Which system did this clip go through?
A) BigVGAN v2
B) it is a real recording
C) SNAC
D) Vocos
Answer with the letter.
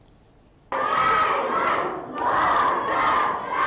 B